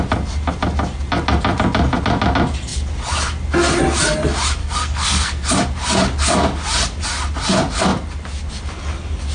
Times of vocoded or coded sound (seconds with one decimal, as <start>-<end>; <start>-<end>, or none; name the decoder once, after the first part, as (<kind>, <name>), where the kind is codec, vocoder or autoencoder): 4.6-5.5 (codec, SNAC)